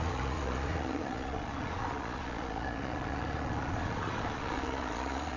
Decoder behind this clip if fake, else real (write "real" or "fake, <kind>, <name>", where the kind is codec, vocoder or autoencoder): fake, vocoder, Vocos